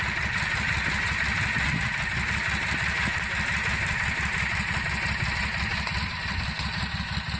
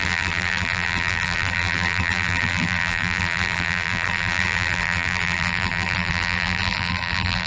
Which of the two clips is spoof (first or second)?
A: second